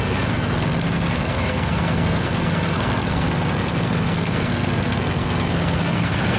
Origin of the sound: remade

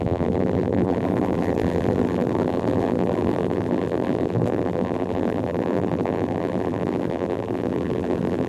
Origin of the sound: remade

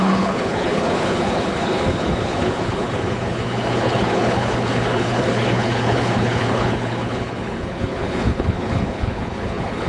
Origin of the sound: remade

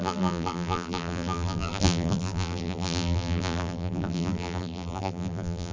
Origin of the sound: remade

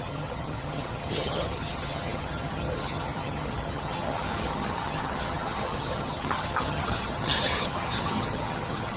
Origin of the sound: remade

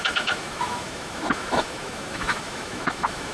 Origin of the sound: remade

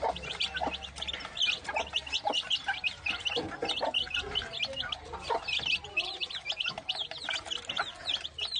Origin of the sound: recorded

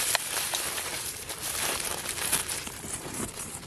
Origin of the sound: remade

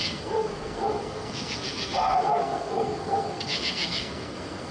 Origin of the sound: remade